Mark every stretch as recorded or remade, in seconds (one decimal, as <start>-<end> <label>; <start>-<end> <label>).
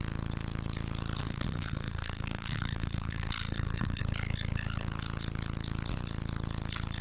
0.0-1.2 recorded; 1.2-4.0 remade; 4.0-7.0 recorded